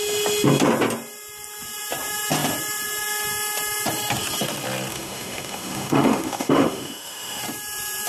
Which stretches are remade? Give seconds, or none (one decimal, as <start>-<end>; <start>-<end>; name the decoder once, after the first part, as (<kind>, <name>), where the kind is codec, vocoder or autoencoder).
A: 4.9-7.4 (autoencoder, DAC-VAE)